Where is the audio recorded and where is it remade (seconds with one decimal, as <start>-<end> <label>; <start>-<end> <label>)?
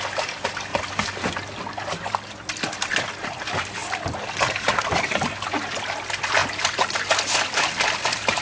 0.0-8.4 recorded